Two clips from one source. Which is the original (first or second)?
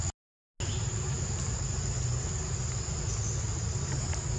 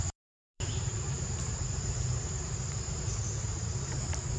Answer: first